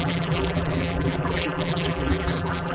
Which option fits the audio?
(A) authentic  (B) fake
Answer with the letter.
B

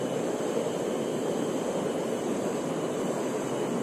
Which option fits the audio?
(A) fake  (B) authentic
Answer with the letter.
B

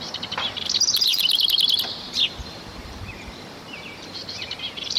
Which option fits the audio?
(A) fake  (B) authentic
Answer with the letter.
A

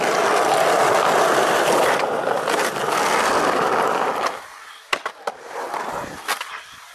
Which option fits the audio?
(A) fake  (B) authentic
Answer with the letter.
B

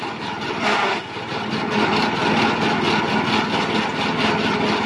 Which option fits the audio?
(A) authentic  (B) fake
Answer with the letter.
A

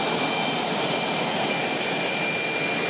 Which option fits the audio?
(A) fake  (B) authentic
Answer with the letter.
B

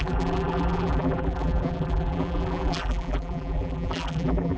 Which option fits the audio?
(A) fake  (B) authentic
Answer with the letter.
A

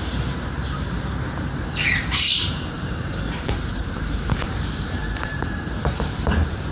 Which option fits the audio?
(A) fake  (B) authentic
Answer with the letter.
A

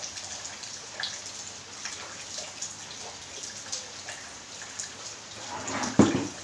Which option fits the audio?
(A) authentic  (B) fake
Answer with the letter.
A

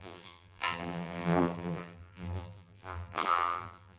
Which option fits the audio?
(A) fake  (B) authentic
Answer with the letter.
A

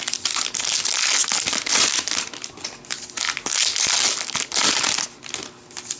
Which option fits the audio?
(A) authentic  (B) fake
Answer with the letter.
A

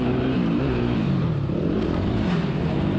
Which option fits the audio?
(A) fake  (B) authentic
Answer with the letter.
A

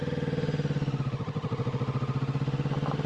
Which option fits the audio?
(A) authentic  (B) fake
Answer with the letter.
A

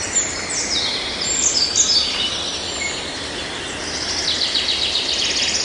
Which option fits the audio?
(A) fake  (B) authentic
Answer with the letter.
B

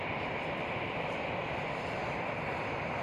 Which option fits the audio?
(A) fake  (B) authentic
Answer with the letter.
A